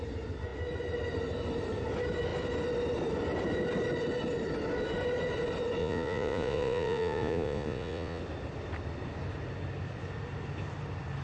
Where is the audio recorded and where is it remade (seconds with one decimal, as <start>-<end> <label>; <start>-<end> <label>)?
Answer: 0.0-5.8 recorded; 5.8-8.2 remade; 8.2-11.2 recorded